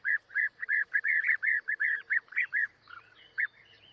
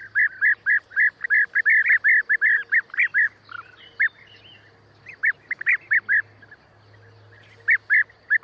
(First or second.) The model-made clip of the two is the first